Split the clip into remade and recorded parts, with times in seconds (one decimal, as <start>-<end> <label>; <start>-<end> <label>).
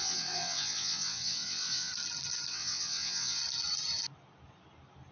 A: 0.0-1.9 remade; 1.9-2.5 recorded; 2.5-3.4 remade; 3.4-5.1 recorded